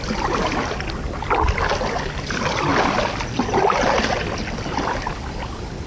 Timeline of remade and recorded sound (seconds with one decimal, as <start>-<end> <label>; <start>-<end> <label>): 0.0-5.9 recorded